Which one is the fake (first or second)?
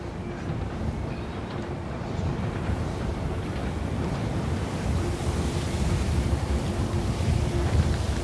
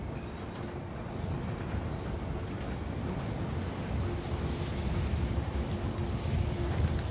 first